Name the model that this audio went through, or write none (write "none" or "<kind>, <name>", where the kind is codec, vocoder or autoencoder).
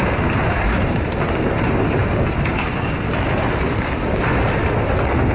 none